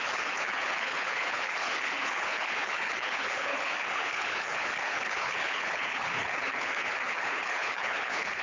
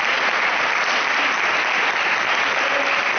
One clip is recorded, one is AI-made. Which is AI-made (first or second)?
first